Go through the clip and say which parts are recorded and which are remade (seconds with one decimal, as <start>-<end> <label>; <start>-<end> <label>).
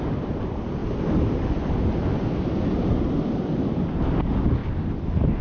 0.0-4.6 recorded; 4.6-5.4 remade